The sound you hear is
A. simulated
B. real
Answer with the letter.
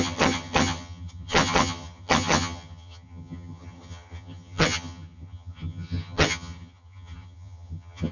A